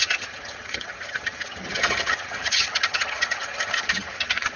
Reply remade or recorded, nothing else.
remade